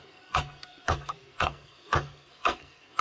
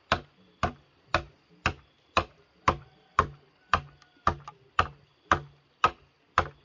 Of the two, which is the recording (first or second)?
second